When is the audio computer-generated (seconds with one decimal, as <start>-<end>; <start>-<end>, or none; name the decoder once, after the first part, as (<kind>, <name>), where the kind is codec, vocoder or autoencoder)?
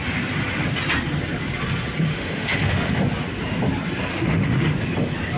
2.1-3.0 (autoencoder, DAC-VAE); 4.1-4.7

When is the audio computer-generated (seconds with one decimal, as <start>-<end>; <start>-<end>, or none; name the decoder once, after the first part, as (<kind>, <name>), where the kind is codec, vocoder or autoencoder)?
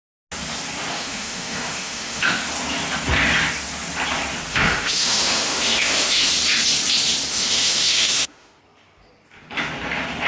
0.9-2.4 (autoencoder, DAC-VAE); 4.5-6.3; 7.3-8.6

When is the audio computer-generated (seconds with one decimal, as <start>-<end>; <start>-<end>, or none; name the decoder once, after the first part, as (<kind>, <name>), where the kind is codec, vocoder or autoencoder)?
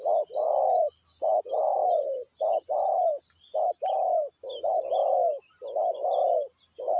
5.0-5.5 (autoencoder, DAC-VAE)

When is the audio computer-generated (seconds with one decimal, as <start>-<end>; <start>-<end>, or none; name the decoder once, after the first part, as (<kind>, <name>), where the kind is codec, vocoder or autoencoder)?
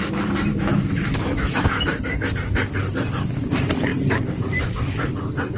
0.5-2.3 (autoencoder, DAC-VAE)